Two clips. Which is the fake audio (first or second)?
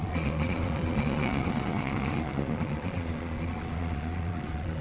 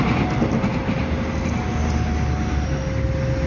first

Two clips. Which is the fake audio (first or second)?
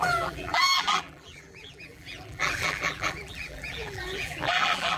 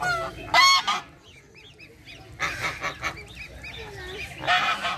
first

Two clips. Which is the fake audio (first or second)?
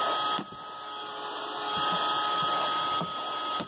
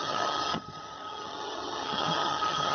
second